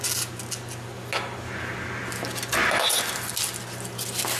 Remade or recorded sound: recorded